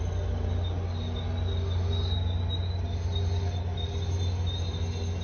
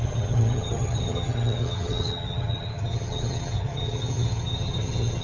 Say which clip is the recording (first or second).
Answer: first